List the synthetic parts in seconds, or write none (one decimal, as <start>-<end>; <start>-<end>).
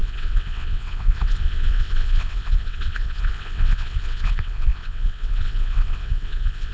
0.0-6.7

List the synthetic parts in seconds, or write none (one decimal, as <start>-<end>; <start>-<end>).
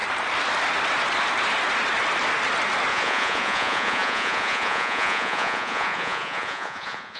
2.9-7.2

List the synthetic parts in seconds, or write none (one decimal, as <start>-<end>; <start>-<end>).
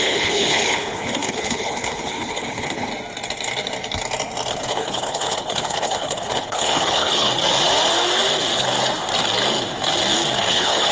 0.0-2.9; 4.5-7.3; 10.5-10.9